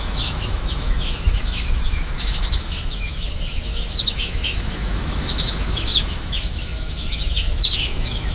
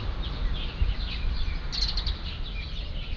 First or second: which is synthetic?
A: first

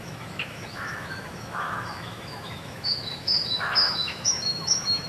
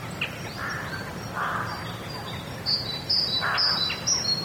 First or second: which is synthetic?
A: first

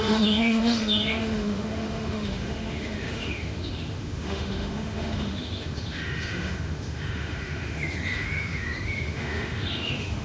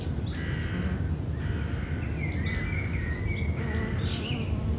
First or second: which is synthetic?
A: first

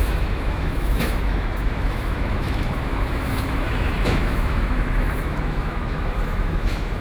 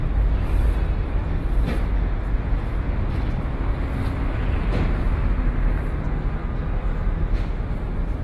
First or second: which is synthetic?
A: first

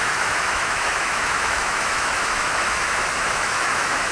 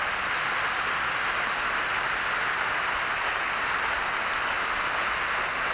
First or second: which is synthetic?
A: first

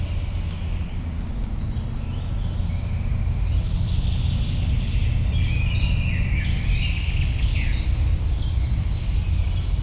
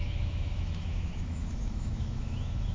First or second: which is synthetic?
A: second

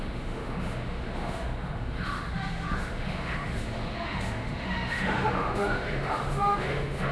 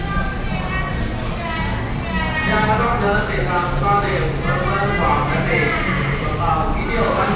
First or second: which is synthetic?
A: first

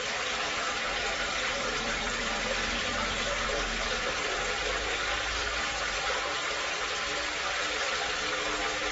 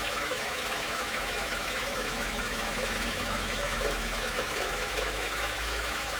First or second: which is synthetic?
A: second